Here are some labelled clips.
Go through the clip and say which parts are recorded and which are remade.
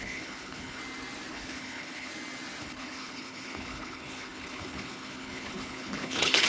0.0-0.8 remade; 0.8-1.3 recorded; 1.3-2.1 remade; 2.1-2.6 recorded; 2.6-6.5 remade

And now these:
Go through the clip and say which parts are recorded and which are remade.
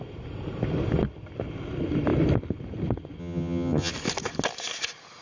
0.0-3.2 recorded; 3.2-3.9 remade; 3.9-5.2 recorded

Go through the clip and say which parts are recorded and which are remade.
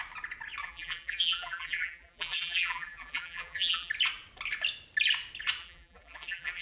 0.0-0.6 recorded; 0.6-3.9 remade; 3.9-5.6 recorded; 5.6-6.6 remade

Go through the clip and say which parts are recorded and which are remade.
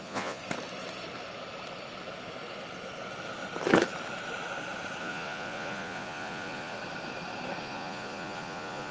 0.0-0.4 remade; 0.4-5.0 recorded; 5.0-6.8 remade; 6.8-7.6 recorded; 7.6-8.9 remade